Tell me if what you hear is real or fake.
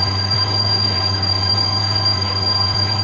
fake